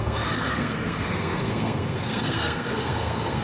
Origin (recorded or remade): remade